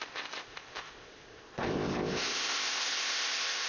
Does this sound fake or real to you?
fake